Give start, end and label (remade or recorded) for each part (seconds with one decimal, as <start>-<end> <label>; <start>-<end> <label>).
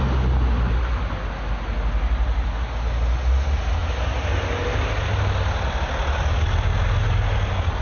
0.0-7.8 recorded